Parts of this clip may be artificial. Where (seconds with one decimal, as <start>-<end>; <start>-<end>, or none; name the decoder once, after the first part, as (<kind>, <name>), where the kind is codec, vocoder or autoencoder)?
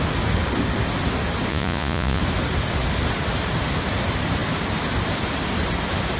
1.5-2.2 (vocoder, Vocos)